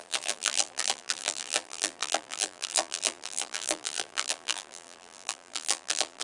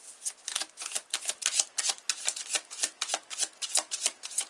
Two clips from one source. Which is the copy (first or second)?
first